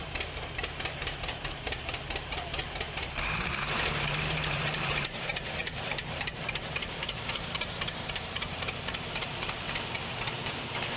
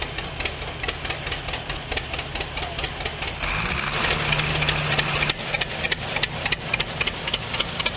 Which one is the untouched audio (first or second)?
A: second